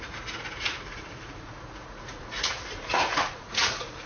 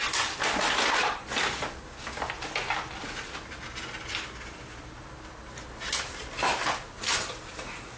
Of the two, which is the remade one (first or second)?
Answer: first